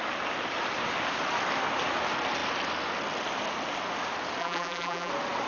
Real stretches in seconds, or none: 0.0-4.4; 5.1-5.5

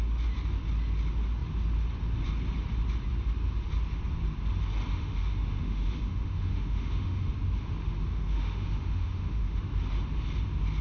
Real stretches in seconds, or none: 0.0-4.9; 7.3-8.1; 9.6-10.8

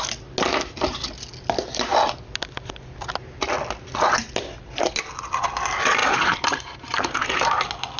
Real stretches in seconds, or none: 0.0-6.0; 7.5-8.0